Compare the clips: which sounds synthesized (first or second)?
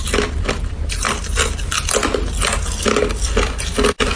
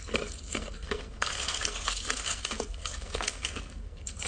second